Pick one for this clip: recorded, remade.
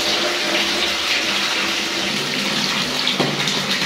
recorded